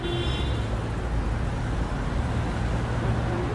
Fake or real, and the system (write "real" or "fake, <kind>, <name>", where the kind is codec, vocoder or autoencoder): real